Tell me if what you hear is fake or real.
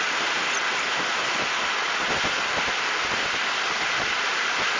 real